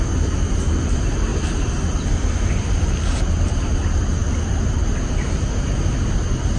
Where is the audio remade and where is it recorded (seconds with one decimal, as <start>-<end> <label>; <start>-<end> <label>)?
0.0-6.6 recorded